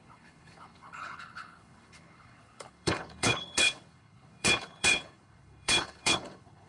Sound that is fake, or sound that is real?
fake